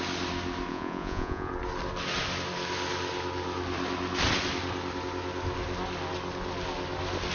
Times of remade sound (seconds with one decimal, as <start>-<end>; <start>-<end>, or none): 0.7-1.5